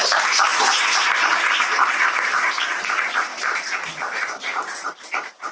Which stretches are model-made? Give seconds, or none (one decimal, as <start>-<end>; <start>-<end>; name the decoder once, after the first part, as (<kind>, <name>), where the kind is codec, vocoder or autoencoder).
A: 0.0-5.5 (vocoder, BigVGAN v2)